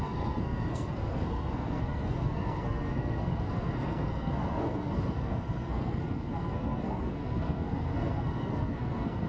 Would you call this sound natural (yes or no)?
no